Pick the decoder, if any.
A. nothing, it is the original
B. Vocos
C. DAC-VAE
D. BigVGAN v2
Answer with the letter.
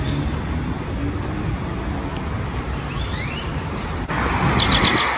A